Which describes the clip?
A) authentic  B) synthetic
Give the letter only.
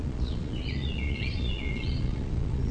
B